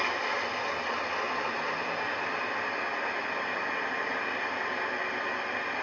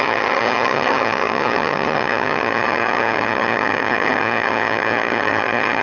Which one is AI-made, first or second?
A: second